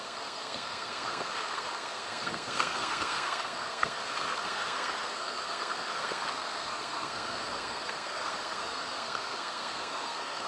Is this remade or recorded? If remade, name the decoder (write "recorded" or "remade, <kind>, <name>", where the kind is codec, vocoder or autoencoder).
remade, codec, SNAC